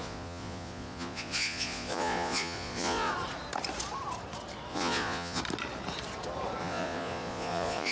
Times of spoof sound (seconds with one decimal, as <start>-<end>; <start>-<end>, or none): 0.0-3.1; 4.7-5.4; 6.6-7.9

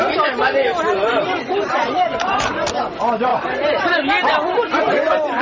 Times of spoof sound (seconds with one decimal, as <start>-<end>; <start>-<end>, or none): 0.4-2.8; 3.3-3.8

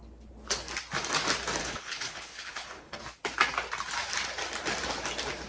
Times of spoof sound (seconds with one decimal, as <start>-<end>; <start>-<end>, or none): 1.6-3.0

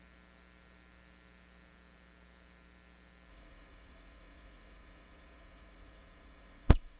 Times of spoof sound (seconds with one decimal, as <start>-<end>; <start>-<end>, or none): 3.3-7.0

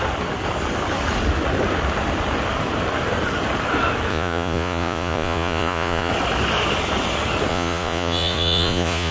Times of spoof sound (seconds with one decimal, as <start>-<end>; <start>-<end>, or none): 4.1-6.1; 7.5-9.1

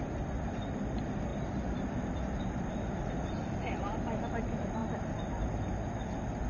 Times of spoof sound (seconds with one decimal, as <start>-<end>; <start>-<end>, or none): none

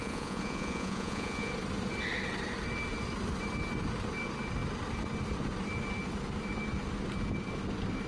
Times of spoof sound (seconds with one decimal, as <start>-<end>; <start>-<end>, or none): 0.0-1.5

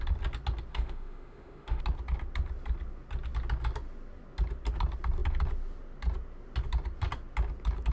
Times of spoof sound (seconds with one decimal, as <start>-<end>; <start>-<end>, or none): 0.7-1.8